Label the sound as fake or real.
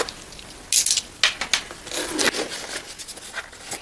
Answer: real